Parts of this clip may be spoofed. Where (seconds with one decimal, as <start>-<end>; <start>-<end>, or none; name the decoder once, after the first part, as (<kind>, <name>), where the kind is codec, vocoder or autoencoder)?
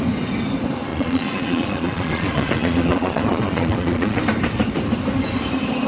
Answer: 0.9-4.2 (vocoder, Vocos)